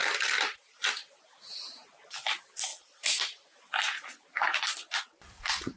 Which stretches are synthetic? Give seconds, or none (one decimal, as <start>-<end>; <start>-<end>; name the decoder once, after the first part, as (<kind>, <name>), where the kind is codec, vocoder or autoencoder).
2.7-5.8 (vocoder, BigVGAN v2)